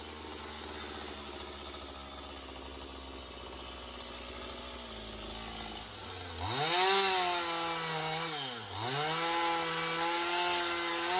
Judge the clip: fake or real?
real